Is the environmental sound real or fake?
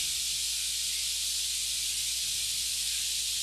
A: real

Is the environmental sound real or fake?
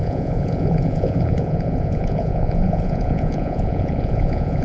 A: fake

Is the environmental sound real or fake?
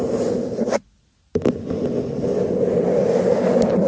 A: real